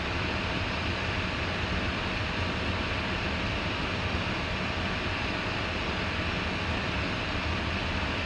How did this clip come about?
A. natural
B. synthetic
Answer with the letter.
A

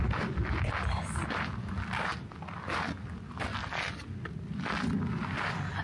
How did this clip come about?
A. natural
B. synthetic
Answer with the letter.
A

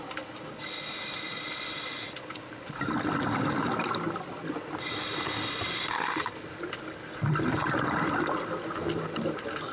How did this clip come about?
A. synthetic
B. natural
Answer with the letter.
B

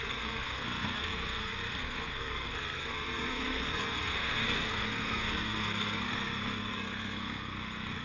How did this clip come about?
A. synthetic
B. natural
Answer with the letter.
A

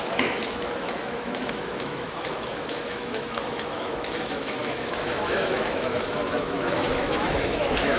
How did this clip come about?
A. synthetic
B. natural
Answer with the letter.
A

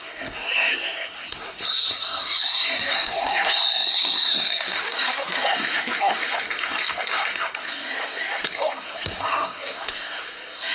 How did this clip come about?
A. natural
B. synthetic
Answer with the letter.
B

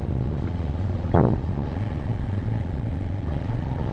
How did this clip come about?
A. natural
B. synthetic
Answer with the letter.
B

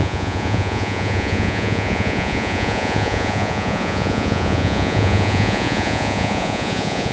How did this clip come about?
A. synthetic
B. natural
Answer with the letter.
A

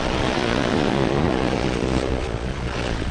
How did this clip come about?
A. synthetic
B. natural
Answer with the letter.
A